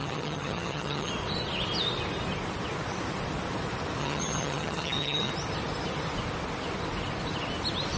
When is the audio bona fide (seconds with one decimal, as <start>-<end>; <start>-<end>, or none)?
1.1-4.0; 5.3-8.0